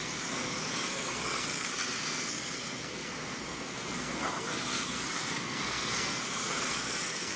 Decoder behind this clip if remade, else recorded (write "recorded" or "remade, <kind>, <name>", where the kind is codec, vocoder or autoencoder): remade, codec, SNAC